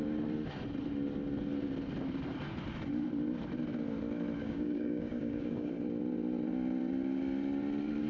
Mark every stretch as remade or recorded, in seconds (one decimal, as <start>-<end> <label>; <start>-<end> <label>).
0.0-4.4 recorded; 4.4-5.7 remade; 5.7-8.1 recorded